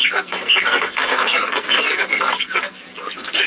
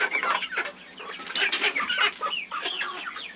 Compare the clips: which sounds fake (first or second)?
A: first